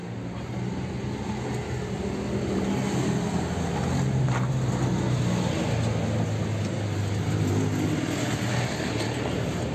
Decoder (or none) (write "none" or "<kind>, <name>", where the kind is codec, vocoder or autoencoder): none